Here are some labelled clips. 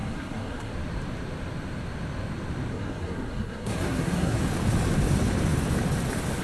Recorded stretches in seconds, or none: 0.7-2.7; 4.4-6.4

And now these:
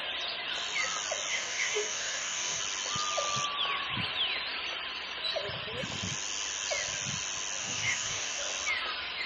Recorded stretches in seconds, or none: 0.0-1.3; 2.6-7.6; 8.4-9.3

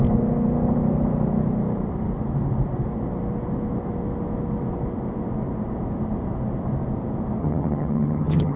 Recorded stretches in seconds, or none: 0.0-7.4

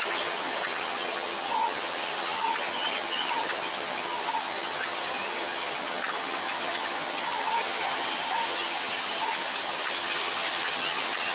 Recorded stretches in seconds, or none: none

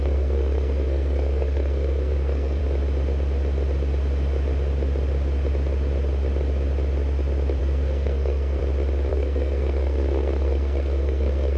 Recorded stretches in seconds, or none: 2.6-7.6; 8.6-9.1

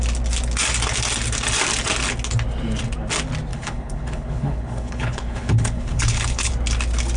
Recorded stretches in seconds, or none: 0.0-3.5; 6.5-7.2

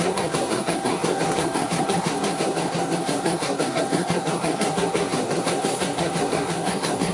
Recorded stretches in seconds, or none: none